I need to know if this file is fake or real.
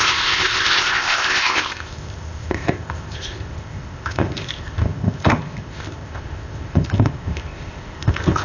fake